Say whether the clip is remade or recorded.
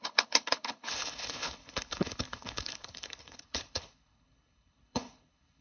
remade